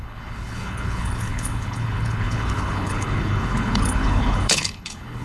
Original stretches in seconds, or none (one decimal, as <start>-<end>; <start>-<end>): none